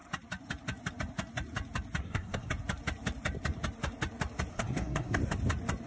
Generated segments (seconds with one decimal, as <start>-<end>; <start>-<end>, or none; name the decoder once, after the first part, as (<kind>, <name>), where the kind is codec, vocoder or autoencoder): 2.0-2.5 (codec, SNAC); 4.5-5.2